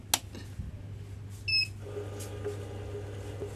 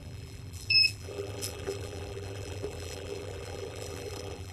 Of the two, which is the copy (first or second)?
second